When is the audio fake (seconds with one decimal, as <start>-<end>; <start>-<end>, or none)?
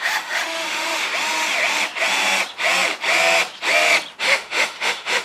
0.0-1.1; 4.2-5.2